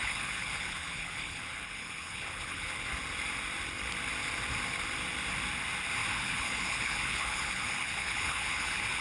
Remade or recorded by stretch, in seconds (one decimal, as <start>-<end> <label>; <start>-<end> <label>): 0.0-2.9 remade; 2.9-6.1 recorded; 6.1-9.0 remade